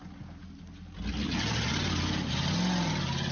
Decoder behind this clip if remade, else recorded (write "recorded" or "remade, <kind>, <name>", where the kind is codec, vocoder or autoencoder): recorded